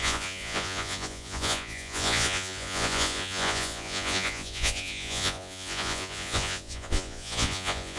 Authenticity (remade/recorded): remade